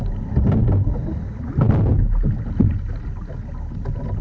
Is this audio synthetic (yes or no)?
no